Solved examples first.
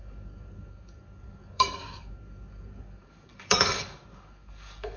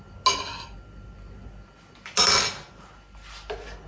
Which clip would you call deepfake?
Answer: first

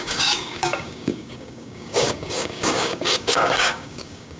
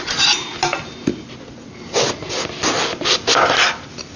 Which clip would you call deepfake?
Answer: first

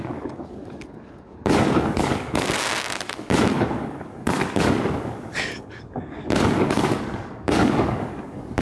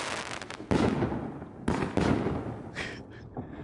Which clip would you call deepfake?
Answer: first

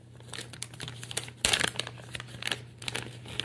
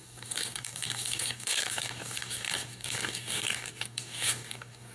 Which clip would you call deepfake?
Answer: second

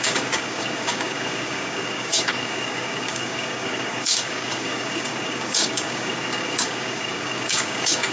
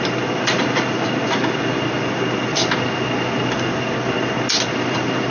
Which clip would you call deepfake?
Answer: first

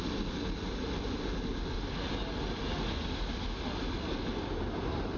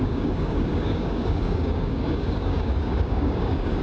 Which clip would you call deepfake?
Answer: second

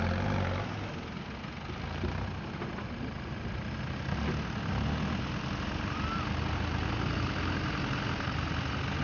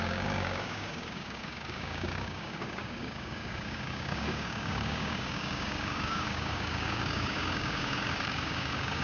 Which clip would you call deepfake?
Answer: second